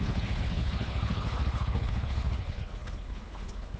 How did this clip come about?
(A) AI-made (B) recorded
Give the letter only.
A